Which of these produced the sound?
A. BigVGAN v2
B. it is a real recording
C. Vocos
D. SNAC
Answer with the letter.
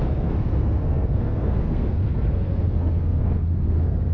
D